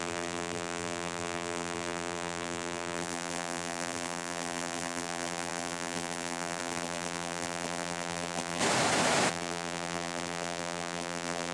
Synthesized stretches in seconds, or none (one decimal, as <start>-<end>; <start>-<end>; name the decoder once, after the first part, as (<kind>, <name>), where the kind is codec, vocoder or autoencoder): 0.0-8.6 (vocoder, BigVGAN v2); 9.3-11.5